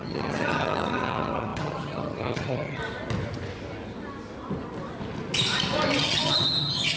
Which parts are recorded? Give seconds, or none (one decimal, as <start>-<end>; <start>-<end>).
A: 2.8-6.0